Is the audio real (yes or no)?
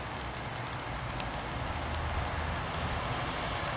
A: yes